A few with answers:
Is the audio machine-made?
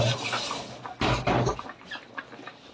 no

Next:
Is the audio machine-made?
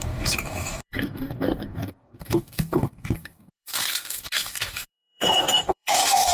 yes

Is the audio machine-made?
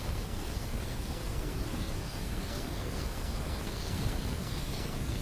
yes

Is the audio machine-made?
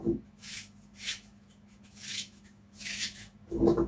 yes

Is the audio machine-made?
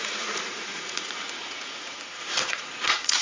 yes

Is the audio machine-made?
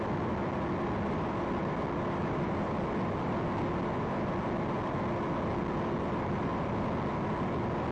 no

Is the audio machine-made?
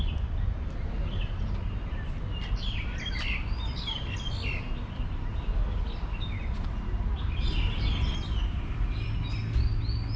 no